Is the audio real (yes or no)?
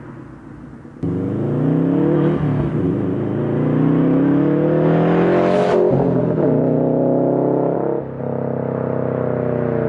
yes